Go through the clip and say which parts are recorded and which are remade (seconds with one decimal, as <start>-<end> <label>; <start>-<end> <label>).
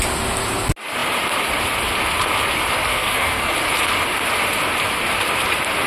0.0-2.9 recorded; 2.9-3.5 remade; 3.5-5.9 recorded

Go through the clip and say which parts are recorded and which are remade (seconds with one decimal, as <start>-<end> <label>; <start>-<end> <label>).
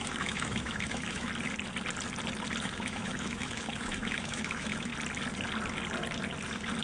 0.0-1.3 remade; 1.3-2.6 recorded; 2.6-4.9 remade; 4.9-6.8 recorded